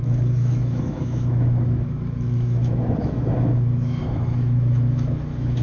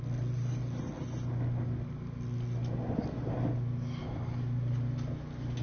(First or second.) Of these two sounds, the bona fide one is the second